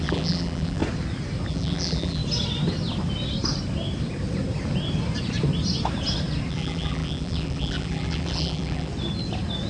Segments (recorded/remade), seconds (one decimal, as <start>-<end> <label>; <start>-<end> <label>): 0.0-0.8 remade; 0.8-1.5 recorded; 1.5-2.2 remade; 2.2-6.5 recorded; 6.5-8.9 remade; 8.9-9.7 recorded